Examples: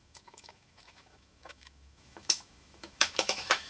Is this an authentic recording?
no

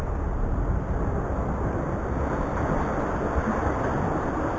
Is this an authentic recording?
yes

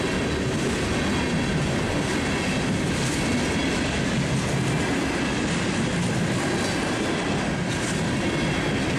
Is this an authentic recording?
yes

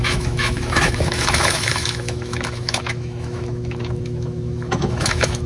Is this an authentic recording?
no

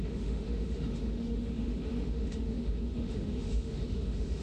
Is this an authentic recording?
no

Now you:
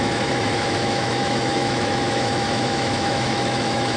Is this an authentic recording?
no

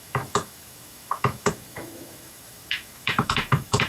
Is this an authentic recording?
no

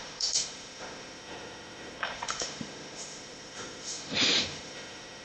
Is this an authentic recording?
no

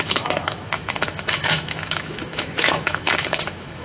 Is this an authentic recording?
no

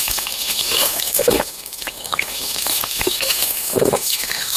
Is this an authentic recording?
no